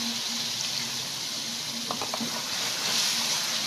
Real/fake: real